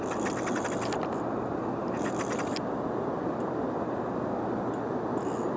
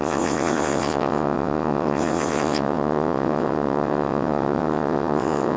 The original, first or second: first